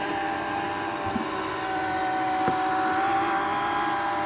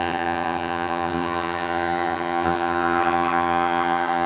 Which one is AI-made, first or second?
second